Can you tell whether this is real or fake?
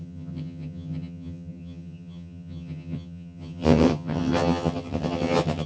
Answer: fake